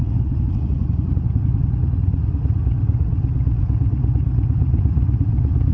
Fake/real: fake